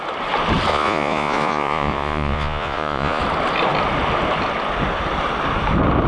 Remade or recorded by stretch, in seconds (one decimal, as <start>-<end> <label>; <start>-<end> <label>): 0.0-0.7 recorded; 0.7-3.2 remade; 3.2-6.1 recorded